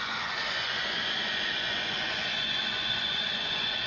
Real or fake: fake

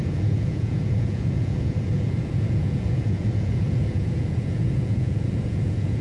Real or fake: fake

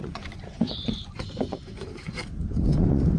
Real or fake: fake